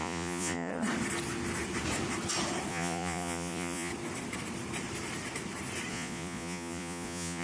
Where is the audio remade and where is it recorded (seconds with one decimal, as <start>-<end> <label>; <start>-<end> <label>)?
0.0-0.7 remade; 0.7-2.7 recorded; 2.7-3.9 remade; 3.9-5.9 recorded; 5.9-7.4 remade